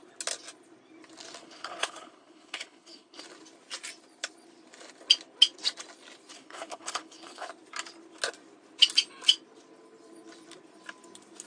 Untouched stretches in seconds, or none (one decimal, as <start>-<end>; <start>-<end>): 0.0-1.4; 3.2-6.3; 7.5-11.5